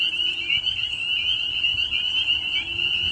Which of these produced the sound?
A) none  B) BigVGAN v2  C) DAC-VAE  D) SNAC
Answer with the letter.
A